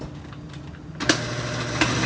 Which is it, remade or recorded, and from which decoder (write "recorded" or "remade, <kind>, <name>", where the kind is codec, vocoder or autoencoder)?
recorded